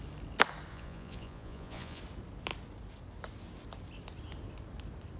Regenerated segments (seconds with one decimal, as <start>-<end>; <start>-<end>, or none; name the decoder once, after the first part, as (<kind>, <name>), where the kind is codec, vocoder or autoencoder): 0.7-2.0 (vocoder, Vocos)